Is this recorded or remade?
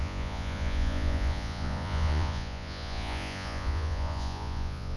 remade